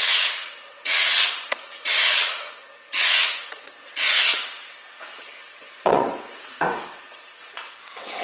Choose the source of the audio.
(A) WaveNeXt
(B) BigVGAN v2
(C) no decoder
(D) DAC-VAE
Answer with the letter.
A